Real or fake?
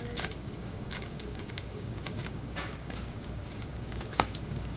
fake